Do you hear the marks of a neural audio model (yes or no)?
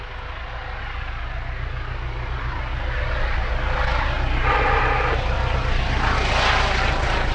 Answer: no